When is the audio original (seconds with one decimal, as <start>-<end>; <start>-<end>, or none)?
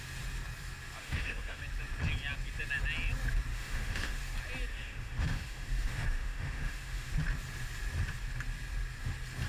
0.0-1.0; 1.6-3.5; 4.2-4.7; 7.1-9.5